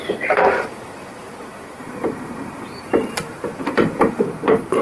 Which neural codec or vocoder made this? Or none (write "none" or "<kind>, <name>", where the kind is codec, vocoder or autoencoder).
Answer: vocoder, BigVGAN v2